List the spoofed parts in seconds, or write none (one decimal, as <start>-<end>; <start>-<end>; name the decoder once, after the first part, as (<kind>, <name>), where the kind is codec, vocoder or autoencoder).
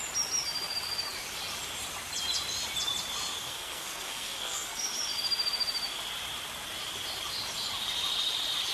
3.4-4.9 (codec, SNAC)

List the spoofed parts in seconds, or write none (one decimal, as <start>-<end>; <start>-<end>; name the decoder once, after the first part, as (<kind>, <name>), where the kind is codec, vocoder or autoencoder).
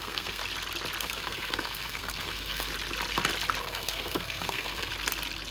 0.0-0.4 (codec, SNAC); 1.0-2.7; 3.6-4.9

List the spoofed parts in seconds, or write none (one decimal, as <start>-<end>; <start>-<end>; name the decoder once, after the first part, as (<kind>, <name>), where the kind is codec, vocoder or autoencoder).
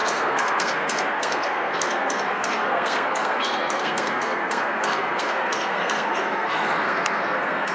0.0-7.7 (codec, SNAC)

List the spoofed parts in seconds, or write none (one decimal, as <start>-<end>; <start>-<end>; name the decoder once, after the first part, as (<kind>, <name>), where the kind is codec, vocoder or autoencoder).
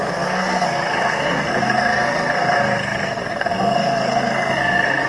0.0-5.1 (codec, SNAC)